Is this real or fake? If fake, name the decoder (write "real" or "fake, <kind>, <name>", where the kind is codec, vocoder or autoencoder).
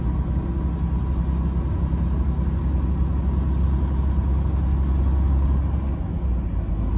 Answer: real